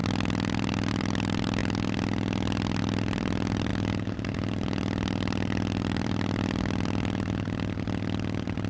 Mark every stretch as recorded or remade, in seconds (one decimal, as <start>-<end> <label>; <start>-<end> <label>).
0.0-1.6 remade; 1.6-2.8 recorded; 2.8-8.7 remade